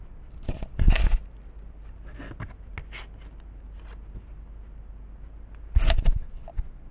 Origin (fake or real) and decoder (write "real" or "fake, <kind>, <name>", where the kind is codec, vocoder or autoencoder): real